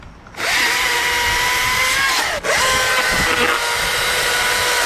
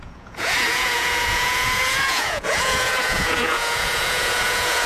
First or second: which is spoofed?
second